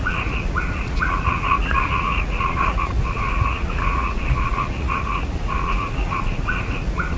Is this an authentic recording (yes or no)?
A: no